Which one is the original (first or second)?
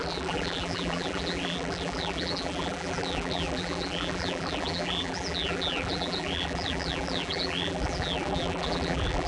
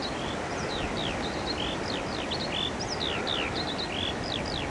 second